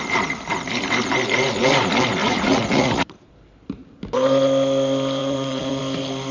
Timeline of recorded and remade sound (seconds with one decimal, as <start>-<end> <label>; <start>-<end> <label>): 0.0-2.2 recorded; 2.2-3.3 remade; 3.3-5.2 recorded; 5.2-5.8 remade; 5.8-6.3 recorded